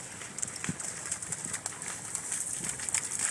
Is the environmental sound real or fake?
real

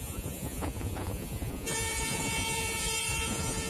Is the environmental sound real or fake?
fake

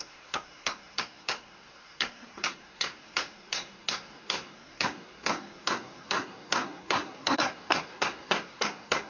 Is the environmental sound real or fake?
fake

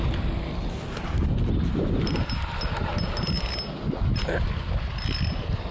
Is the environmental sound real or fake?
real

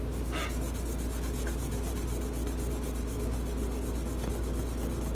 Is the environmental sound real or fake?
real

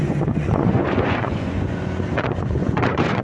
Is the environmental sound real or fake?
fake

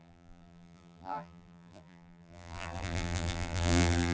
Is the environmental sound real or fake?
fake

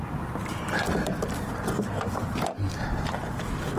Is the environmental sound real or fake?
fake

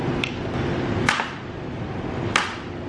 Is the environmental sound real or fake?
real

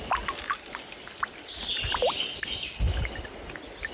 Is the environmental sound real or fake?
real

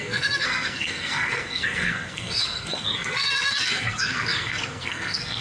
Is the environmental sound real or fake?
fake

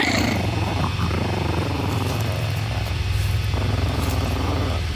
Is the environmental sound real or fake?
fake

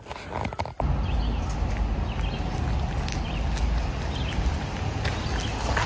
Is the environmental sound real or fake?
real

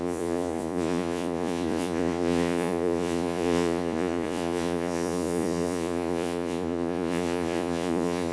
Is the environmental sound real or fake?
fake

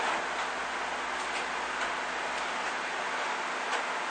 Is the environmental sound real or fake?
real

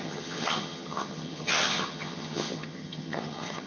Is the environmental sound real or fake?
fake